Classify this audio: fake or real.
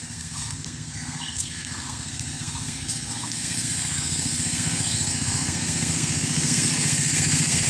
fake